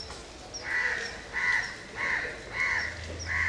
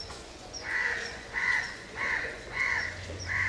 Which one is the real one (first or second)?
first